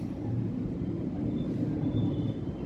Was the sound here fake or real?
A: fake